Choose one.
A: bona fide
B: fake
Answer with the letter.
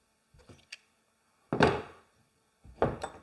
B